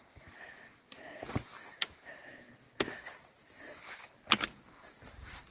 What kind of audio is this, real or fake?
real